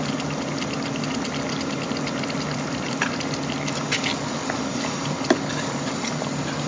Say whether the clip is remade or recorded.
recorded